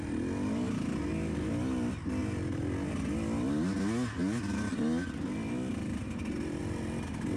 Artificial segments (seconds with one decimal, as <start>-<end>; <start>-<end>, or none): none

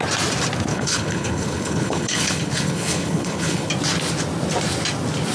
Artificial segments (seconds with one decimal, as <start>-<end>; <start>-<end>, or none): 0.7-3.7

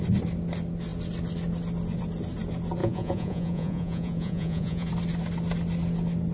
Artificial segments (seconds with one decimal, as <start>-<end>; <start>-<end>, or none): 2.8-4.9

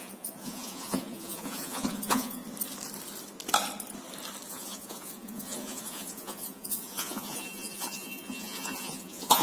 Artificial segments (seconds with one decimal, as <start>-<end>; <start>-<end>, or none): 0.0-2.4; 4.5-9.4

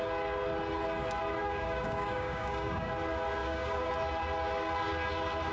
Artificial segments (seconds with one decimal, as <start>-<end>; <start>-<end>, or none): 1.4-2.9; 3.4-3.9